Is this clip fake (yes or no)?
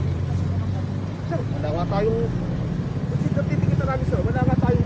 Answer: no